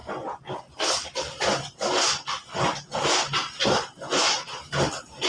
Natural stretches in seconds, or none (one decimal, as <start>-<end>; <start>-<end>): 0.0-5.3